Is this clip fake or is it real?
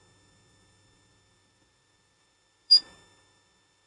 real